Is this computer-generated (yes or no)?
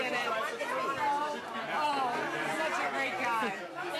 no